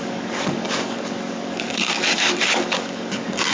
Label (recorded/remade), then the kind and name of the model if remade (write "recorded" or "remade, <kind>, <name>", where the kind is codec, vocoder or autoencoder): remade, codec, DAC